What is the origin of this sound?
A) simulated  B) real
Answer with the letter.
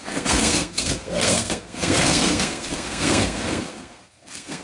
A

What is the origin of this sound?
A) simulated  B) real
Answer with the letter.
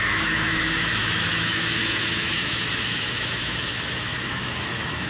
A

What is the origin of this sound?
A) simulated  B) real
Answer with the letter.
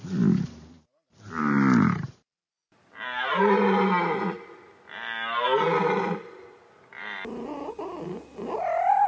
B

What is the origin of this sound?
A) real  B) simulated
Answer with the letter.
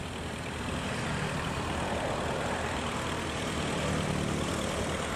B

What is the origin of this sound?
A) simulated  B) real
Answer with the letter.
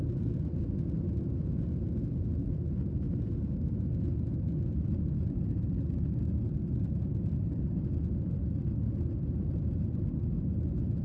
B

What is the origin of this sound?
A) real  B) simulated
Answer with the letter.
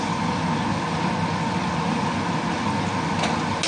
A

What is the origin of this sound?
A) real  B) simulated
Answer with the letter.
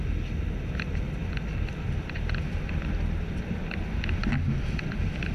A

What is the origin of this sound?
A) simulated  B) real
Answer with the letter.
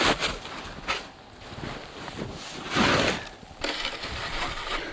B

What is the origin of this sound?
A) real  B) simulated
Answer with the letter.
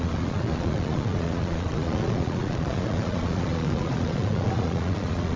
B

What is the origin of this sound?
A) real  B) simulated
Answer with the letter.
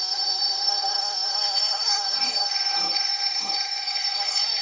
B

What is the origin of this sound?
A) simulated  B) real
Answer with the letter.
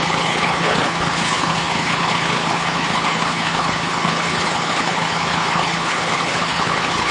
A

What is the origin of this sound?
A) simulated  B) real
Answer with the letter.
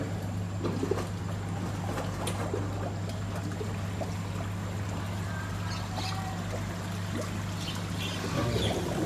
B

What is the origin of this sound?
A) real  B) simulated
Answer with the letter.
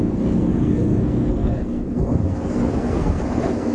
B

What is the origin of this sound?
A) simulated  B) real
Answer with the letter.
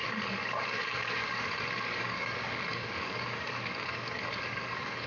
A